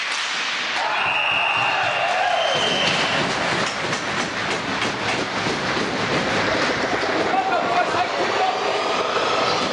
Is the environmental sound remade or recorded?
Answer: recorded